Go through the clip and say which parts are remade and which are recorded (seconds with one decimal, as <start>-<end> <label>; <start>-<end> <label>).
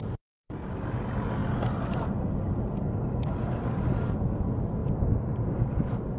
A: 0.0-6.2 recorded